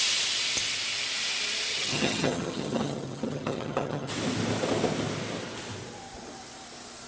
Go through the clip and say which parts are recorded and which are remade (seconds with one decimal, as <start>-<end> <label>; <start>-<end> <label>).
0.0-1.7 recorded; 1.7-4.1 remade; 4.1-7.1 recorded